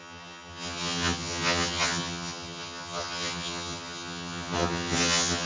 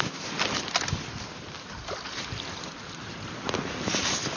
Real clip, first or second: second